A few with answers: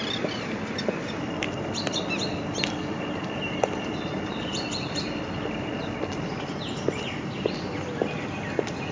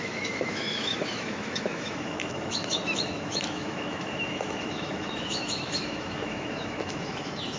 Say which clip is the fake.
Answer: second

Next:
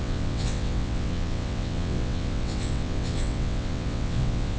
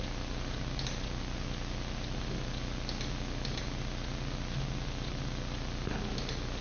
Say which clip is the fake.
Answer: first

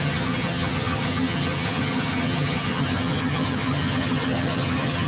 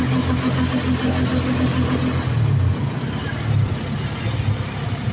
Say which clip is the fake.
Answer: first